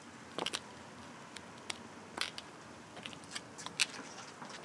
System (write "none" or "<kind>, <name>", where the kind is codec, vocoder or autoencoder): none